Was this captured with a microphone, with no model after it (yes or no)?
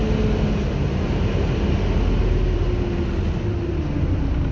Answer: yes